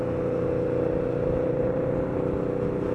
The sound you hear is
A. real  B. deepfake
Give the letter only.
A